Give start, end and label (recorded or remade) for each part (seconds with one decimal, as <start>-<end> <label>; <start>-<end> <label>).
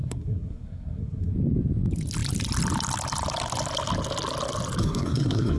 0.0-1.3 remade; 1.3-4.8 recorded; 4.8-5.6 remade